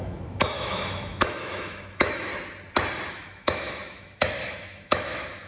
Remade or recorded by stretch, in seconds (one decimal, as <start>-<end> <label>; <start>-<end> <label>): 0.0-2.3 remade; 2.3-3.1 recorded; 3.1-5.5 remade